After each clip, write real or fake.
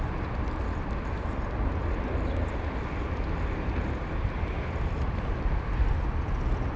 real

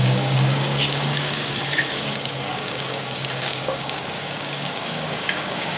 fake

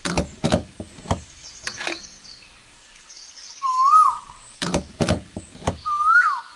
fake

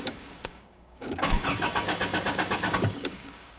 fake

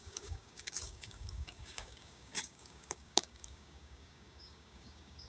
fake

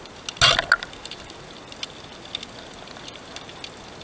real